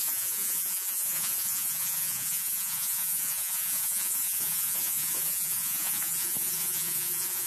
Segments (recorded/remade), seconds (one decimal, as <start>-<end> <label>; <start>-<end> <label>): 0.0-7.5 remade